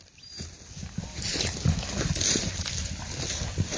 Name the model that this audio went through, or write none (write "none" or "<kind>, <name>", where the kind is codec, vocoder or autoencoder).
none